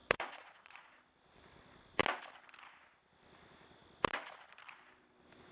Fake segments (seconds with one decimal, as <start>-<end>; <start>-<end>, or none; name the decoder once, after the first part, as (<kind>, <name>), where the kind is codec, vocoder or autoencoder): 0.0-1.0 (vocoder, Vocos)